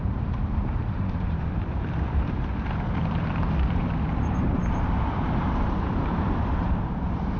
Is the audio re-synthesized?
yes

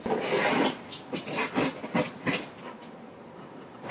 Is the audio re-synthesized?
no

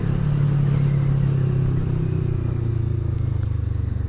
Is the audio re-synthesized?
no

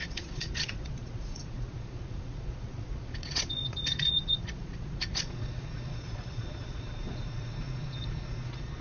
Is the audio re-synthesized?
yes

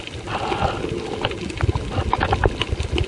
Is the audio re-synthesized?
no